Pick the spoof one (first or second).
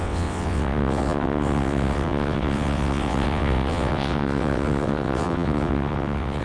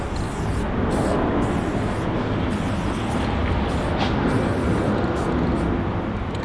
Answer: first